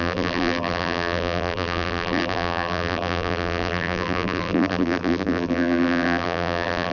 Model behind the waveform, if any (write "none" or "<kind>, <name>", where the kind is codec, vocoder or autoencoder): vocoder, BigVGAN v2